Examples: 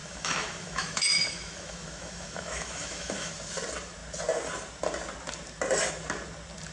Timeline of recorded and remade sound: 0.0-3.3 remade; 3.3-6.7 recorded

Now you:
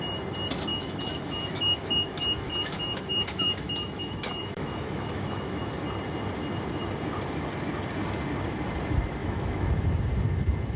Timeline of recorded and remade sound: 0.0-0.7 recorded; 0.7-5.7 remade; 5.7-9.2 recorded; 9.2-9.7 remade; 9.7-10.8 recorded

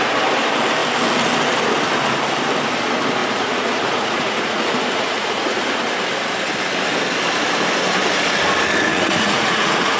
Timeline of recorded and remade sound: 0.0-3.2 recorded; 3.2-5.8 remade; 5.8-8.9 recorded; 8.9-10.0 remade

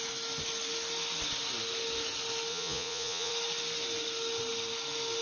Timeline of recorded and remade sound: 0.0-2.5 recorded; 2.5-3.3 remade; 3.3-5.2 recorded